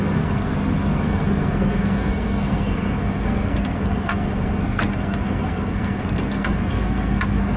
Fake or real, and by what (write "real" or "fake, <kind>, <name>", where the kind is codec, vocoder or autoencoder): fake, codec, SNAC